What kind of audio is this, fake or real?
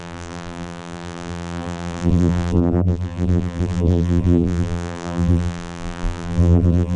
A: fake